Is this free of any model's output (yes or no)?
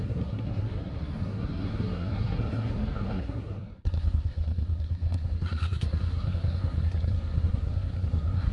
no